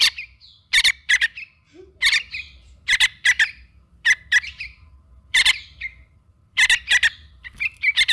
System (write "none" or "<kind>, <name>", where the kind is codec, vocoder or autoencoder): vocoder, BigVGAN v2